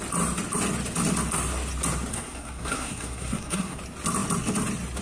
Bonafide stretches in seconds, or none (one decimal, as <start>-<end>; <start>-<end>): 0.0-2.1; 3.8-5.0